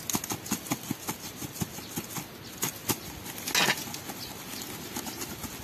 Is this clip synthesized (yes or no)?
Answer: no